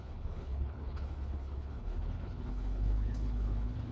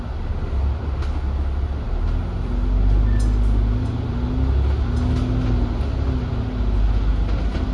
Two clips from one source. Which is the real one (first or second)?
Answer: second